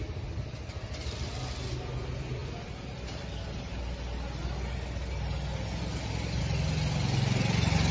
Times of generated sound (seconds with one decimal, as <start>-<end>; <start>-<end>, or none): none